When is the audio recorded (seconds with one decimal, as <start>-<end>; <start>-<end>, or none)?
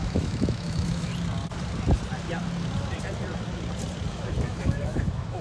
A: 1.1-4.1